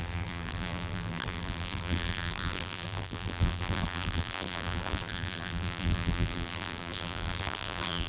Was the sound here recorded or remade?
remade